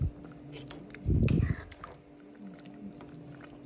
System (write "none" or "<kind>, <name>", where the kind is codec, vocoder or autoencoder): none